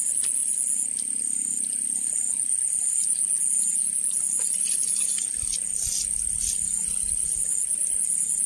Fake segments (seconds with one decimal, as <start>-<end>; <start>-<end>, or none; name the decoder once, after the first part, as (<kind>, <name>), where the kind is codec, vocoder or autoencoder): none